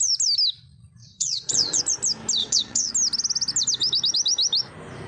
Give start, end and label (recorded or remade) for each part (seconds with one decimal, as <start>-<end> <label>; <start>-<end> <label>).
0.0-1.0 recorded; 1.0-1.8 remade; 1.8-2.4 recorded; 2.4-2.9 remade; 2.9-5.1 recorded